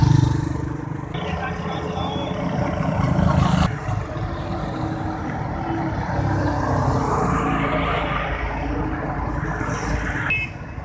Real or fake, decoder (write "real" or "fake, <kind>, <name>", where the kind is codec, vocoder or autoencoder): real